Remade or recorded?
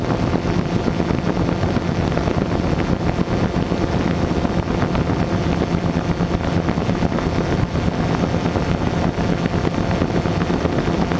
recorded